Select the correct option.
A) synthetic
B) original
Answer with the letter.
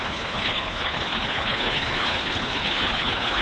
A